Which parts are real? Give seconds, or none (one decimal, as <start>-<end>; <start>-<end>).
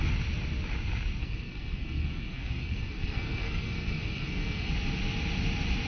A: 0.0-1.2; 4.7-5.9